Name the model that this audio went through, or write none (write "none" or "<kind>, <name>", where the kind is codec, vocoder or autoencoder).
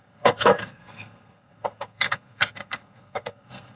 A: codec, SNAC